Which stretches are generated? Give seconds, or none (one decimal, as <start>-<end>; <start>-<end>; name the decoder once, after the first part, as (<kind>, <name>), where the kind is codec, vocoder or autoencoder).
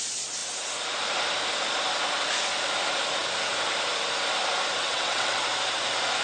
4.8-5.4 (vocoder, WaveNeXt)